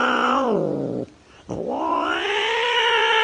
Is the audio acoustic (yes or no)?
no